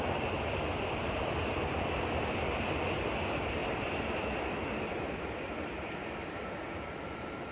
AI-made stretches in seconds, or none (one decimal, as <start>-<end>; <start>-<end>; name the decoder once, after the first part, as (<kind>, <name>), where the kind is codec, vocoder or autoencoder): 3.6-5.8 (vocoder, BigVGAN v2)